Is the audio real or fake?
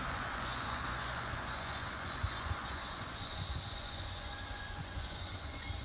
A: fake